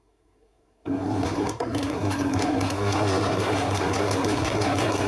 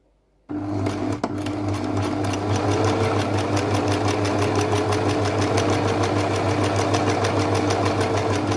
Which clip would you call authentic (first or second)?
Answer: second